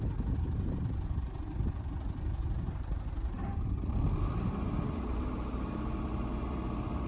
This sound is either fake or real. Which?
fake